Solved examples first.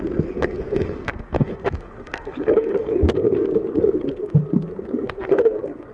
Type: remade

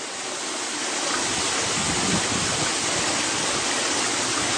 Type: recorded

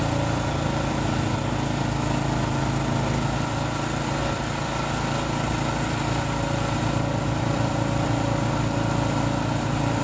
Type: recorded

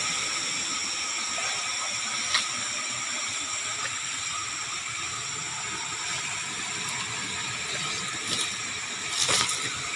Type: recorded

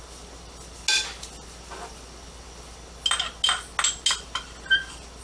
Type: recorded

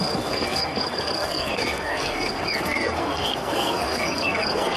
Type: remade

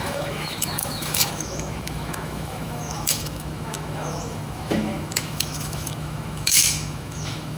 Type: remade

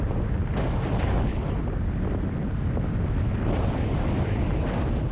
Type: recorded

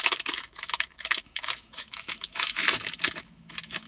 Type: remade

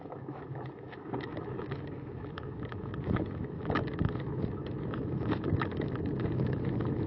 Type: remade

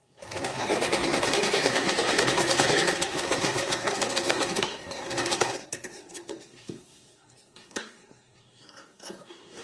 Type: remade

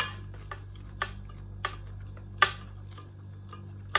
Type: recorded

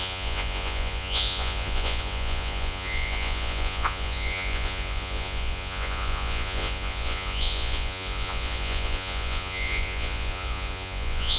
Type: remade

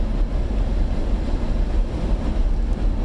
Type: recorded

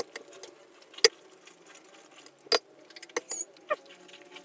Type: recorded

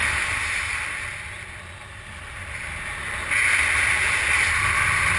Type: recorded